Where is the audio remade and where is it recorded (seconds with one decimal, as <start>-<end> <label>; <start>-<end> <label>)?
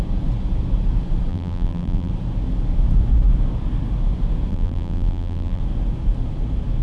0.0-1.3 recorded; 1.3-2.1 remade; 2.1-4.5 recorded; 4.5-5.6 remade; 5.6-6.8 recorded